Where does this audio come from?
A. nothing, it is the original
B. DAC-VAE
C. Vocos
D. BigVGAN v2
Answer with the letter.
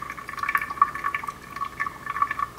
A